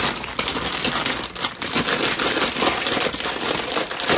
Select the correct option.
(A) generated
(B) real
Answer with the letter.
B